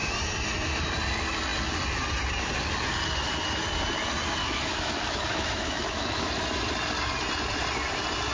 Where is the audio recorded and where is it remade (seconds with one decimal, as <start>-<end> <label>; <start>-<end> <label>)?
0.0-4.4 recorded; 4.4-6.3 remade; 6.3-8.3 recorded